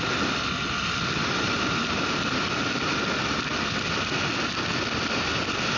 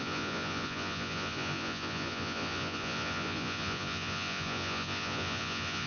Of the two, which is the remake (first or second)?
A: second